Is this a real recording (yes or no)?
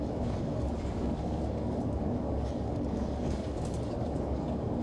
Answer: no